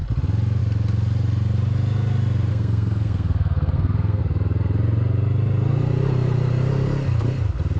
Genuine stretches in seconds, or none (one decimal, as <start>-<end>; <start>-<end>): 0.0-2.5; 4.2-7.8